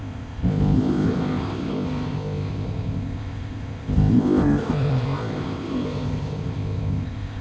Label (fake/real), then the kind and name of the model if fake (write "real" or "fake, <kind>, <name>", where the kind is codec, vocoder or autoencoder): fake, codec, ZipCodec